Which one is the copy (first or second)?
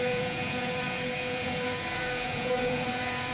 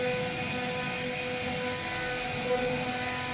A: first